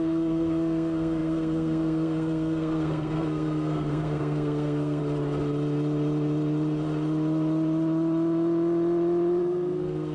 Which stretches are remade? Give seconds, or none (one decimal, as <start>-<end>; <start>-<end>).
0.0-5.0; 9.4-10.1